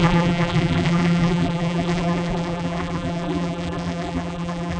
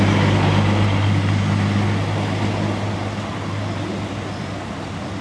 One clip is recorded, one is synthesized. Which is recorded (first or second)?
second